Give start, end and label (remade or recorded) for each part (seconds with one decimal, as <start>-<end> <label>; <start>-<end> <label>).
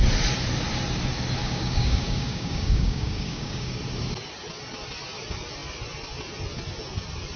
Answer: 0.0-1.4 recorded; 1.4-3.8 remade; 3.8-7.4 recorded